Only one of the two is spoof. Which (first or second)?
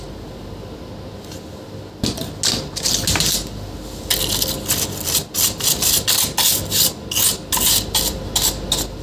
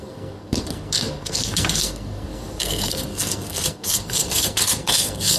second